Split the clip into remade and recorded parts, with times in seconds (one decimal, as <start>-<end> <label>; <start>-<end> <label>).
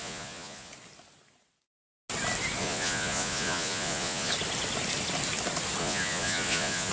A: 0.0-0.7 remade; 0.7-2.6 recorded; 2.6-4.3 remade; 4.3-5.8 recorded; 5.8-6.9 remade